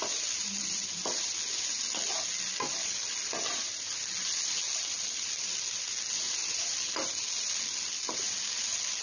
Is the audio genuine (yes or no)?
yes